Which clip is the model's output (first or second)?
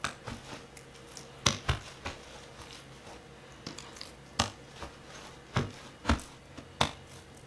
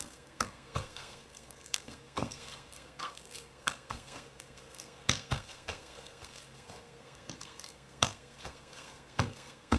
second